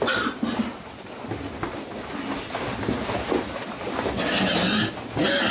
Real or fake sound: real